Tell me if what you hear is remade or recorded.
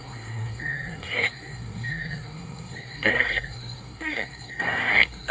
remade